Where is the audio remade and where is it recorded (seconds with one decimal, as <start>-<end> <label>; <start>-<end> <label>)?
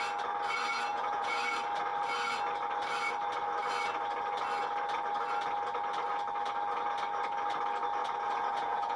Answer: 0.0-0.9 recorded; 0.9-1.4 remade; 1.4-8.0 recorded; 8.0-9.0 remade